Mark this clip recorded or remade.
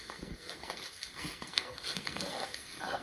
remade